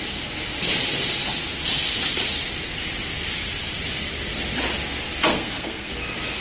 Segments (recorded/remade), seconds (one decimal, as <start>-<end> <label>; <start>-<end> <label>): 0.0-5.3 recorded; 5.3-5.9 remade; 5.9-6.4 recorded